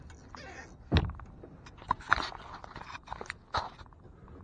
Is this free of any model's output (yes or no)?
yes